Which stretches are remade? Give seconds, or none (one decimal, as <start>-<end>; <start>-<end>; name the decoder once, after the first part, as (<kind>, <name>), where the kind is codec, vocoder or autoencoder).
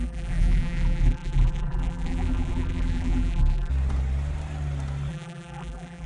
0.0-3.7 (vocoder, BigVGAN v2); 5.1-6.1